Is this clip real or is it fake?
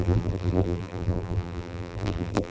fake